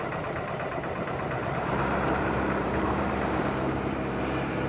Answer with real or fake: fake